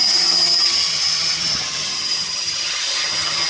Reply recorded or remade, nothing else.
remade